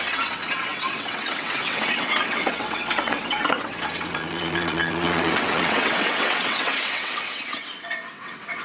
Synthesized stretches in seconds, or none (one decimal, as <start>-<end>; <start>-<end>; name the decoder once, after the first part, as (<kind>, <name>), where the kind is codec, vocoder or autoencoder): 0.0-8.6 (vocoder, WaveNeXt)